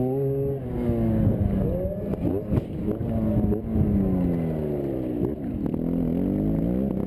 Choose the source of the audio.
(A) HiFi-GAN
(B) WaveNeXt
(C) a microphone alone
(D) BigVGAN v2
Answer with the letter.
C